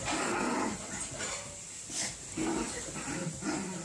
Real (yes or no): yes